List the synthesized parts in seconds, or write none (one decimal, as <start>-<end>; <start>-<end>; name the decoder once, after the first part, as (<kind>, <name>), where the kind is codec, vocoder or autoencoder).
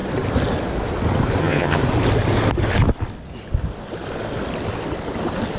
1.4-1.8 (vocoder, HiFi-GAN)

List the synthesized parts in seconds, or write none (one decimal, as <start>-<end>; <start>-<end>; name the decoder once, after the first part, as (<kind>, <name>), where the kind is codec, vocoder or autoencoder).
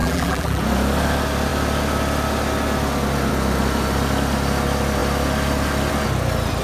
0.0-0.6 (vocoder, BigVGAN v2)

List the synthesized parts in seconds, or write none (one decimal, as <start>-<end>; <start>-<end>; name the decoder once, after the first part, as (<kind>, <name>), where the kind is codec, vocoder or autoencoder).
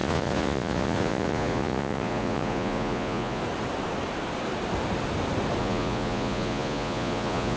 0.0-3.4 (vocoder, Vocos); 5.6-7.6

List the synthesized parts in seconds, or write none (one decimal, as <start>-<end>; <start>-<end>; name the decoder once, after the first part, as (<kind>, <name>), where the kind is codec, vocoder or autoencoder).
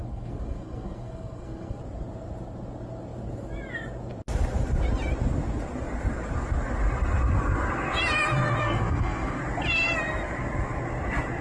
0.0-1.8 (codec, SNAC); 8.6-9.4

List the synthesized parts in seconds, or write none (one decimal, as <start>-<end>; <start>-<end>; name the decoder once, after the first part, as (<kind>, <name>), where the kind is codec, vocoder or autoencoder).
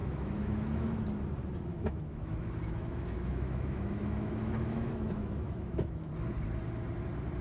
0.0-1.0 (autoencoder, DAC-VAE); 1.7-6.1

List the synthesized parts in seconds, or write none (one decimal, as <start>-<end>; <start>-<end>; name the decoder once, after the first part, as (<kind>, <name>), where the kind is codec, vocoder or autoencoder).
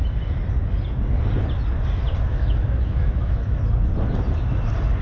2.3-3.6 (autoencoder, DAC-VAE)